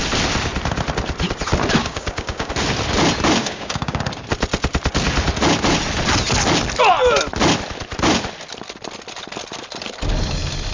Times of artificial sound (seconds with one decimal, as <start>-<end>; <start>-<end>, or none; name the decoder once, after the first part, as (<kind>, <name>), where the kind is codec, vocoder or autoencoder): 1.8-2.5 (codec, DAC); 3.4-4.0